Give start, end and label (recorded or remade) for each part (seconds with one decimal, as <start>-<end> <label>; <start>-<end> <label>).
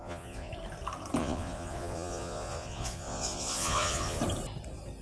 0.0-0.5 remade; 0.5-1.2 recorded; 1.2-4.2 remade; 4.2-5.0 recorded